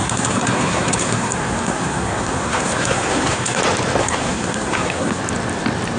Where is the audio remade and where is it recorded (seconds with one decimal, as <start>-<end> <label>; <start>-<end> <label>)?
0.0-3.6 remade; 3.6-4.0 recorded; 4.0-5.2 remade; 5.2-6.0 recorded